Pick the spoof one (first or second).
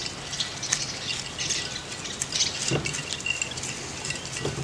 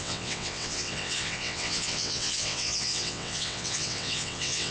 second